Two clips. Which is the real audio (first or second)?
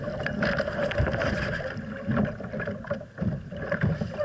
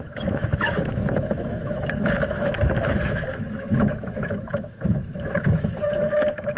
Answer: first